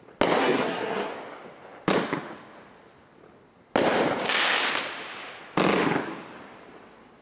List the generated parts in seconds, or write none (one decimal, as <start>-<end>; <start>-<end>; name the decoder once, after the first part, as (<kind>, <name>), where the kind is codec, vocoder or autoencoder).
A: 0.4-1.1 (codec, SNAC)